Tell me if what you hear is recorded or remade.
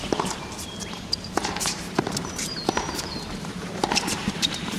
remade